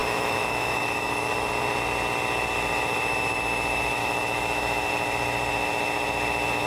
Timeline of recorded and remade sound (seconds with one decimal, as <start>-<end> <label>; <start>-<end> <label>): 0.0-1.5 remade; 1.5-4.0 recorded; 4.0-4.9 remade; 4.9-6.7 recorded